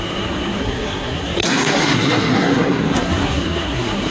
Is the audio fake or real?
fake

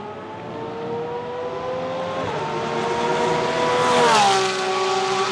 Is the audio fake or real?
real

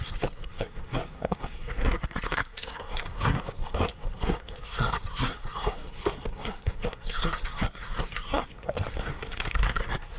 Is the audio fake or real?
fake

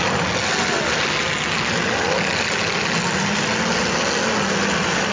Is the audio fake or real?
real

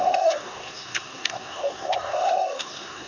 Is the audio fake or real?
fake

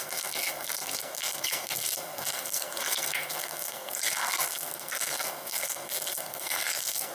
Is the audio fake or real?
fake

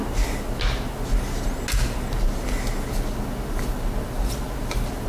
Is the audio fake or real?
real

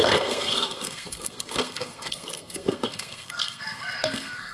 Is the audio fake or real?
fake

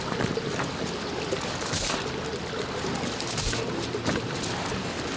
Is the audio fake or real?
real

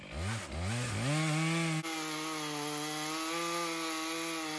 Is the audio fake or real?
real